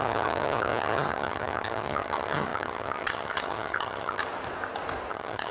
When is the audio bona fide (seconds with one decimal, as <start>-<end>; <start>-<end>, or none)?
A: 4.2-5.1